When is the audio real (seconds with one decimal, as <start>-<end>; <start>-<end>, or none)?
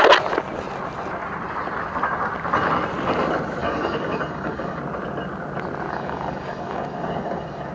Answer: 0.0-3.6; 4.8-5.9